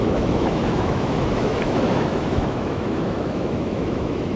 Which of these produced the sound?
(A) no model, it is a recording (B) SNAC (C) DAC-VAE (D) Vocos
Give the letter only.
C